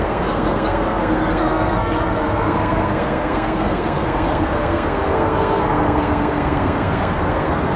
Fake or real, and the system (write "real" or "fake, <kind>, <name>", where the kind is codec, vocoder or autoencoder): fake, codec, SNAC